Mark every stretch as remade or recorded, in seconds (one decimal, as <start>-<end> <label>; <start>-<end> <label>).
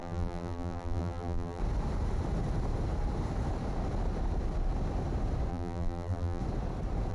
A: 0.0-1.6 remade; 1.6-5.5 recorded; 5.5-6.4 remade; 6.4-7.1 recorded